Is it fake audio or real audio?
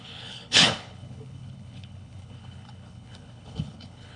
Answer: fake